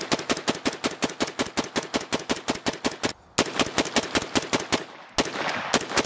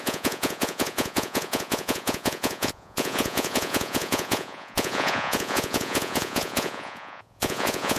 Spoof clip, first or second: second